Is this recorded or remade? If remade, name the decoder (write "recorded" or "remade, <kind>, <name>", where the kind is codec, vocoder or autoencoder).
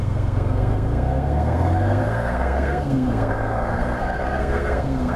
remade, codec, SNAC